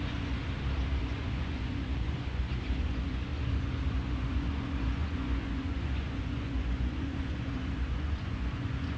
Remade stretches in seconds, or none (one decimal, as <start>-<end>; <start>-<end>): 0.0-0.4; 1.0-9.0